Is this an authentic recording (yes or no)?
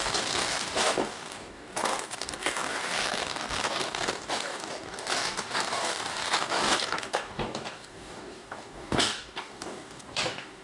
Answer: no